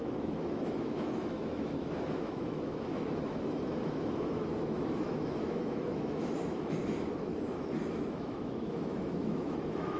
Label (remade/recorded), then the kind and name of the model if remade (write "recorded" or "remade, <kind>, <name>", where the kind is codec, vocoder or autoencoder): remade, autoencoder, DAC-VAE